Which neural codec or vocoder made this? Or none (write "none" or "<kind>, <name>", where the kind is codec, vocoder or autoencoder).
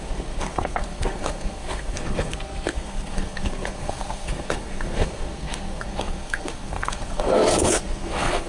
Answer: codec, SNAC